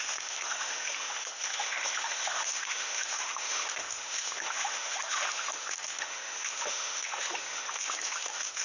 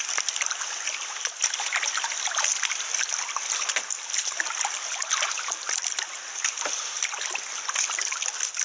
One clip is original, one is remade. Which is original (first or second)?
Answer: second